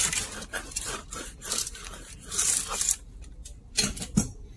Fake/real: fake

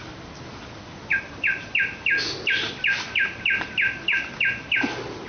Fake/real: real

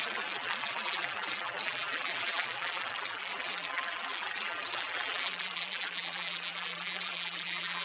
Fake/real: fake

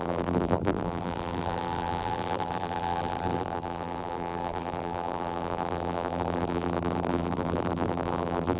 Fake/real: fake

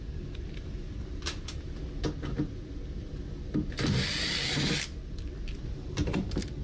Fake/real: real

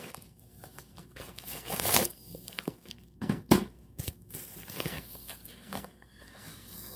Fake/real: fake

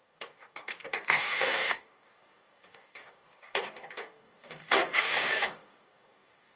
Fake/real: fake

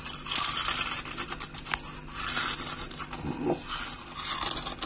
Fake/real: real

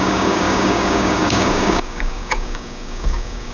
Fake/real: fake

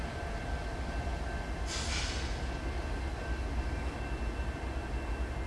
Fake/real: real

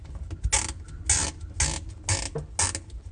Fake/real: real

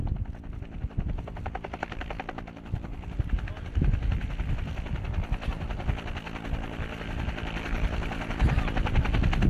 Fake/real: real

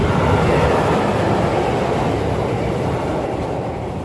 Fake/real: fake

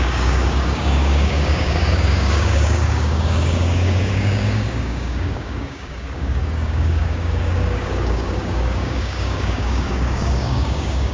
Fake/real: fake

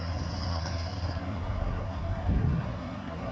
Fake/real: fake